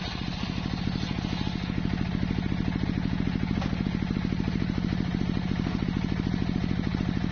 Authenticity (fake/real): real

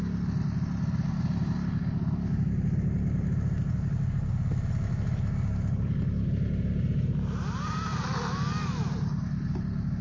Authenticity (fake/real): real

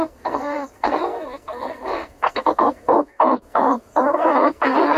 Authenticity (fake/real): fake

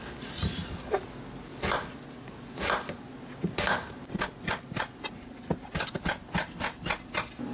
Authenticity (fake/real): real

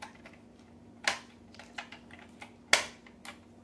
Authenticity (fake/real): real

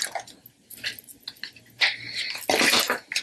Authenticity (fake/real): real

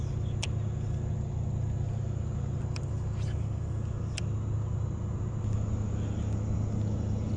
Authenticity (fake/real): real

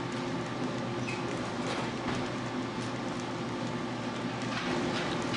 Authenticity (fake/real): real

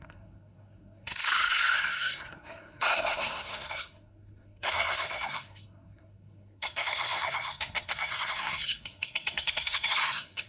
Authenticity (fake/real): fake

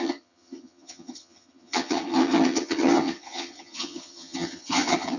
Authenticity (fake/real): fake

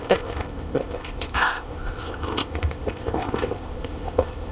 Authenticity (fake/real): fake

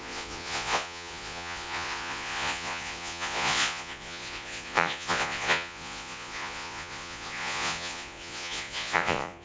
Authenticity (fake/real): fake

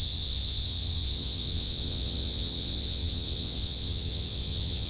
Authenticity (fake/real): fake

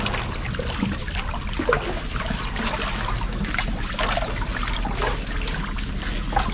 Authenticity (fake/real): real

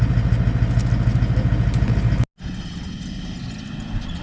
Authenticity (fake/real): real